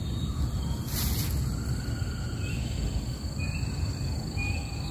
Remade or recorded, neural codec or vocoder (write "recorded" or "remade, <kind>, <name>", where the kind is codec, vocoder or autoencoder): recorded